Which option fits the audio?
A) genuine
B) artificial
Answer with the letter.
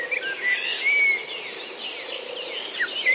A